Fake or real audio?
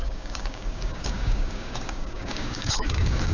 fake